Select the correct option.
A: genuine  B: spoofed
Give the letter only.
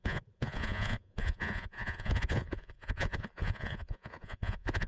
B